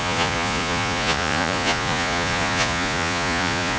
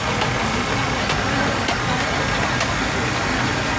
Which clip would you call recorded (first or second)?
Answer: second